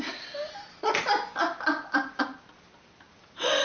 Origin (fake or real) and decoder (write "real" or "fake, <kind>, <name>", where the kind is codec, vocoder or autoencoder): real